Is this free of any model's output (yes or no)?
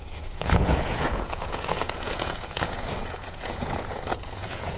no